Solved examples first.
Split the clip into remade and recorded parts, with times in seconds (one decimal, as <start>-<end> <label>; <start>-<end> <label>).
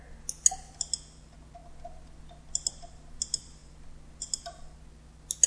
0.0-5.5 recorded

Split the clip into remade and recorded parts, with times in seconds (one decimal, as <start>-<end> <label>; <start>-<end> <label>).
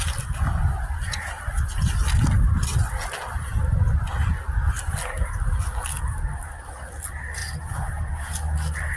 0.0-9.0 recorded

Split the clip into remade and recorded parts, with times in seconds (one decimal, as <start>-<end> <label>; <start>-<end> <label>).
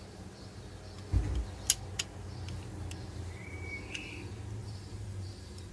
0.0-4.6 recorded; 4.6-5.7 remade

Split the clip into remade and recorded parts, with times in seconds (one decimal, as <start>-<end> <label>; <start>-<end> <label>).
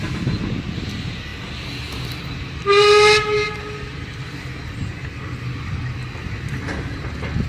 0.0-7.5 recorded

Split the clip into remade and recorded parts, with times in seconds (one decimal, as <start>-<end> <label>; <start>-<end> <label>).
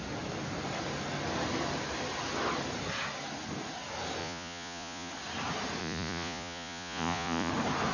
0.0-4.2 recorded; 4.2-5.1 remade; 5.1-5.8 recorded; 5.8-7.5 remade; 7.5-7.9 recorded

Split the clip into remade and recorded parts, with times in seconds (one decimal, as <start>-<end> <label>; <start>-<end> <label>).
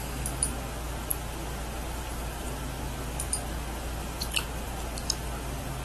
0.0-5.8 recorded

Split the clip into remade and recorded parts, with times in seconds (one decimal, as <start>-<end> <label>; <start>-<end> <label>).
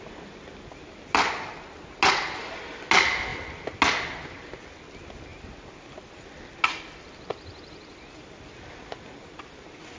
0.0-10.0 recorded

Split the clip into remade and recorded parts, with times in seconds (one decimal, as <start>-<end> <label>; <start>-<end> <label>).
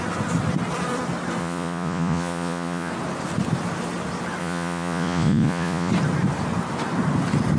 0.0-1.4 recorded; 1.4-2.9 remade; 2.9-4.4 recorded; 4.4-5.9 remade; 5.9-7.6 recorded